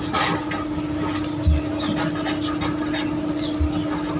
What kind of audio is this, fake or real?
real